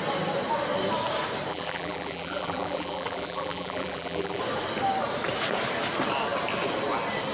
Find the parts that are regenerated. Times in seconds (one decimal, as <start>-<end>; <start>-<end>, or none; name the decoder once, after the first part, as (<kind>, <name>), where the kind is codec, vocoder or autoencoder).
1.5-4.4 (vocoder, BigVGAN v2)